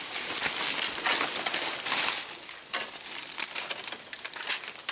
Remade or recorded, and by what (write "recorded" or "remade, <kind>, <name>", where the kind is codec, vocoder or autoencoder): recorded